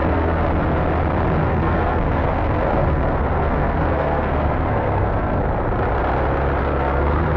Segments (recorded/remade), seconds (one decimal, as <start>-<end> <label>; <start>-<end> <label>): 0.0-0.5 remade; 0.5-1.4 recorded; 1.4-5.4 remade; 5.4-6.6 recorded; 6.6-7.4 remade

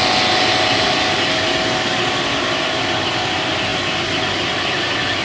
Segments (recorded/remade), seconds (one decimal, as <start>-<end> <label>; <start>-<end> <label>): 0.0-5.2 recorded

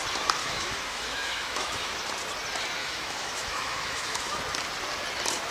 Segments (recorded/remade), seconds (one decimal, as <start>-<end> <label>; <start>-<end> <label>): 0.0-0.4 recorded; 0.4-1.9 remade; 1.9-2.8 recorded; 2.8-4.4 remade; 4.4-5.5 recorded

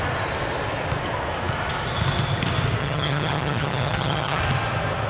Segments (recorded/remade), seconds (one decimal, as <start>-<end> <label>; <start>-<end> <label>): 0.0-2.8 recorded; 2.8-4.4 remade; 4.4-5.1 recorded

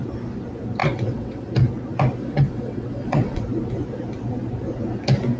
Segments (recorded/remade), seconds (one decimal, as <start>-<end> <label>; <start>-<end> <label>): 0.0-0.8 recorded; 0.8-1.5 remade; 1.5-2.2 recorded; 2.2-3.4 remade; 3.4-5.4 recorded

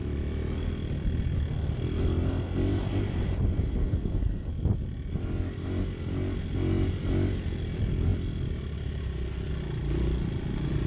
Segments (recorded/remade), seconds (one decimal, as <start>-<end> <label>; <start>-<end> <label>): 0.0-3.8 recorded; 3.8-4.5 remade; 4.5-10.9 recorded